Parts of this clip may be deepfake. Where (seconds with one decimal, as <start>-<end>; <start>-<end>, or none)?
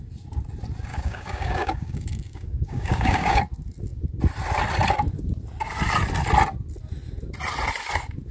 0.9-3.4